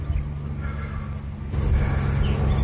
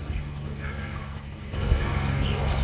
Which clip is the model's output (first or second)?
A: second